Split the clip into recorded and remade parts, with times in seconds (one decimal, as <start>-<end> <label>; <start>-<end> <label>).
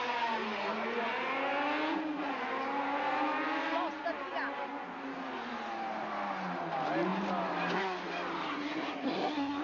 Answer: 0.0-8.5 recorded; 8.5-9.6 remade